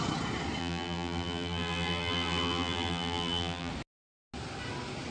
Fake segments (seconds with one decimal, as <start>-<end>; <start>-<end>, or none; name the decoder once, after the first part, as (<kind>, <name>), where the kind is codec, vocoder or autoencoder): 0.6-3.7 (vocoder, BigVGAN v2)